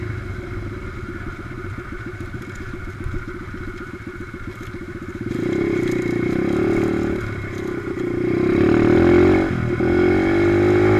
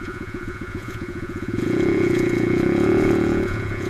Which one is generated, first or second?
second